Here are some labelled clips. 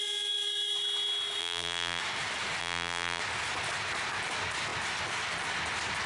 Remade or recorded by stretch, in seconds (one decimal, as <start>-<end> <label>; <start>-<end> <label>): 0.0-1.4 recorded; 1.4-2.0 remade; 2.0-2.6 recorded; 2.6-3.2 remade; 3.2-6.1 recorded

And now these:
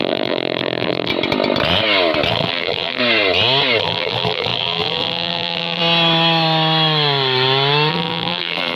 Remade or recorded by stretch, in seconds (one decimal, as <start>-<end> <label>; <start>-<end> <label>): 0.0-1.1 remade; 1.1-2.3 recorded; 2.3-3.0 remade; 3.0-3.8 recorded; 3.8-5.8 remade; 5.8-7.9 recorded; 7.9-8.8 remade

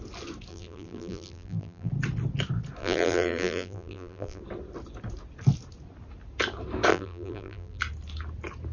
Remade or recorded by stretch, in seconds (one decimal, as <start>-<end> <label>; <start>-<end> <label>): 0.0-0.5 recorded; 0.5-1.9 remade; 1.9-2.8 recorded; 2.8-4.4 remade; 4.4-6.9 recorded; 6.9-7.8 remade; 7.8-8.7 recorded